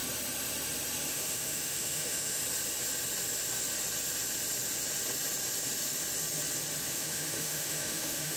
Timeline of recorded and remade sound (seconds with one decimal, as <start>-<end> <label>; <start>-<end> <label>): 0.0-1.1 recorded; 1.1-2.4 remade; 2.4-6.9 recorded; 6.9-8.4 remade